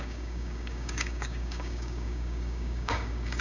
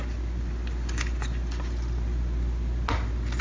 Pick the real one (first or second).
second